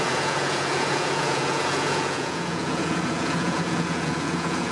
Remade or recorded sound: remade